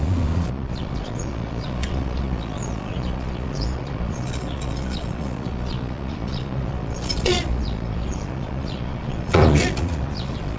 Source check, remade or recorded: remade